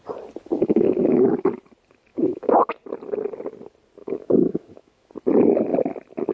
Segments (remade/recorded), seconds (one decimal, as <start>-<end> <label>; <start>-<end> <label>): 0.0-0.6 recorded; 0.6-1.3 remade; 1.3-2.1 recorded; 2.1-2.7 remade; 2.7-4.0 recorded; 4.0-5.1 remade; 5.1-6.3 recorded